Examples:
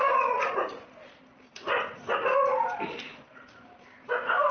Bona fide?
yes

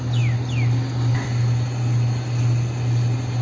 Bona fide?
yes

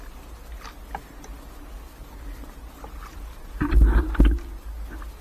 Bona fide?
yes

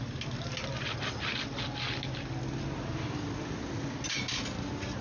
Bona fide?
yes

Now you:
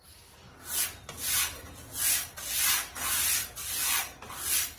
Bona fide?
yes